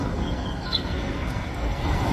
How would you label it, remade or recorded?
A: remade